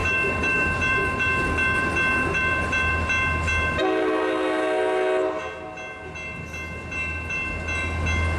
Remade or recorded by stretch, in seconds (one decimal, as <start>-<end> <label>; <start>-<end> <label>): 0.0-2.9 remade; 2.9-8.4 recorded